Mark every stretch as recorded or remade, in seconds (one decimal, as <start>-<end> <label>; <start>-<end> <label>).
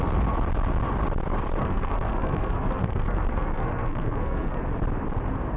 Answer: 0.0-1.6 recorded; 1.6-4.6 remade; 4.6-5.6 recorded